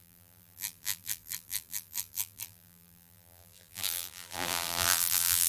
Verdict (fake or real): fake